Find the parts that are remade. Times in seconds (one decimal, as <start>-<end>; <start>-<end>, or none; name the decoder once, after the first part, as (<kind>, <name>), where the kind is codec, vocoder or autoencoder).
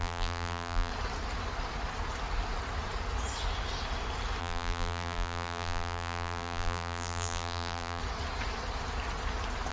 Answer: 0.0-0.9 (vocoder, BigVGAN v2); 4.4-8.0